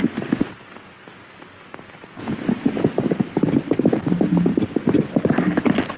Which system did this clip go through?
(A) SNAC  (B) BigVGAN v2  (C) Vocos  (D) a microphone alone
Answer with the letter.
D